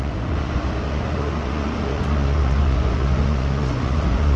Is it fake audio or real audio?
fake